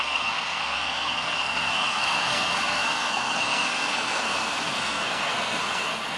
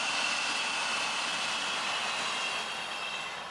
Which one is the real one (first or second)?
second